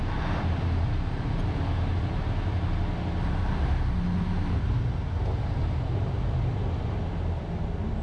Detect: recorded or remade recorded